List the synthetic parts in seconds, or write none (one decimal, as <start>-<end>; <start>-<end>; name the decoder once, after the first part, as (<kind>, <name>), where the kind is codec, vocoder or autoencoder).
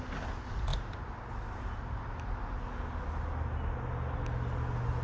none